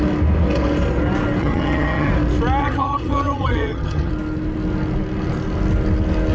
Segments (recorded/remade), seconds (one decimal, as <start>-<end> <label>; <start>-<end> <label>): 0.0-1.4 recorded; 1.4-2.1 remade; 2.1-2.6 recorded; 2.6-4.1 remade; 4.1-6.3 recorded